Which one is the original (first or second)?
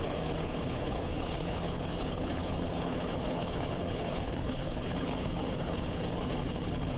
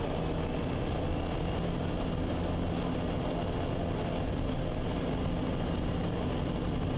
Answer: second